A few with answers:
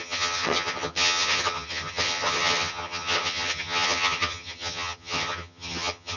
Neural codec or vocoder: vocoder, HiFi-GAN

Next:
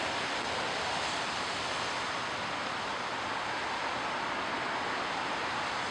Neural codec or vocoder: none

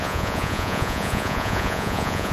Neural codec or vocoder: vocoder, Vocos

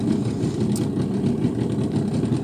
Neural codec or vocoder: none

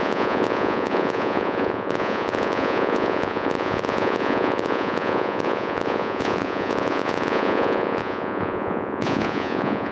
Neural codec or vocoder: vocoder, Vocos